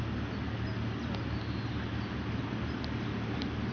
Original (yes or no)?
yes